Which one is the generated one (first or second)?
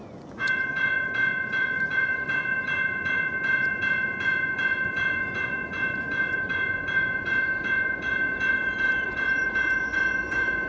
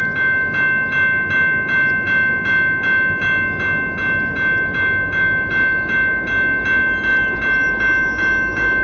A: first